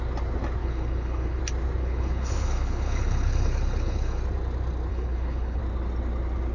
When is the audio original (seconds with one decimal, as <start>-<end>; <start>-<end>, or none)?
0.0-0.6; 1.4-1.8; 4.2-4.9; 5.6-6.5